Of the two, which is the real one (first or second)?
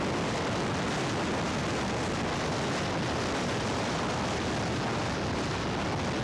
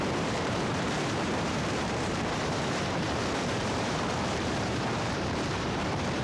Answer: first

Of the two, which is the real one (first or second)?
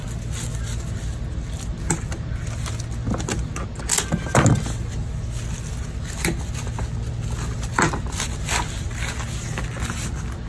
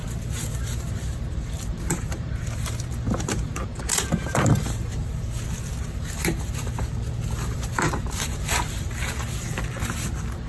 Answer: first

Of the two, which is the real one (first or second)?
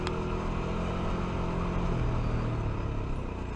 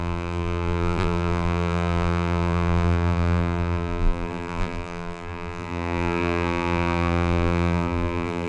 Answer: first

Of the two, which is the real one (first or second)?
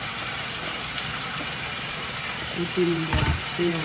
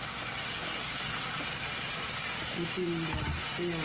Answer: second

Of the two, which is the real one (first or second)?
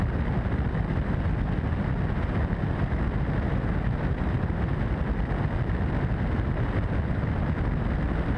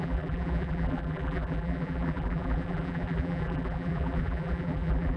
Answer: first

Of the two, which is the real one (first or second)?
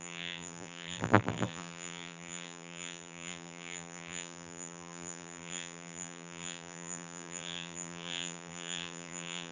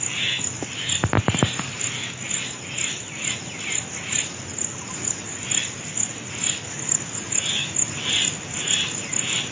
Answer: second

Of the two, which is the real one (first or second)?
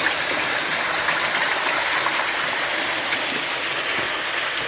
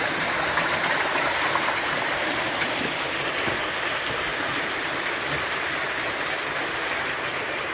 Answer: first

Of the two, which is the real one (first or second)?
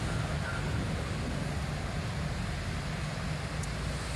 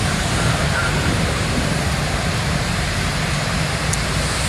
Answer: first